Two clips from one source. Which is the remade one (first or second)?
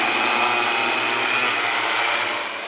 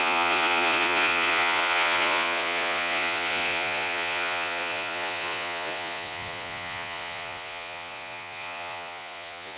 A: second